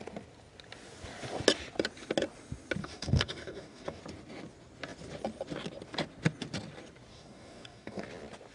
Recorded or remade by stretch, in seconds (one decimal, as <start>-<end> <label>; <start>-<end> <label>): 0.0-2.8 recorded; 2.8-4.0 remade; 4.0-7.1 recorded; 7.1-8.0 remade; 8.0-8.5 recorded